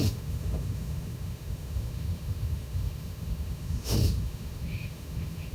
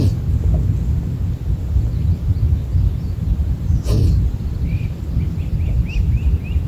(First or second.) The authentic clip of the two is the second